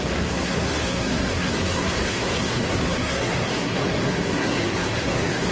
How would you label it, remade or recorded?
remade